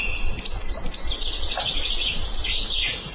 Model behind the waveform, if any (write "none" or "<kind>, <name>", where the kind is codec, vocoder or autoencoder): none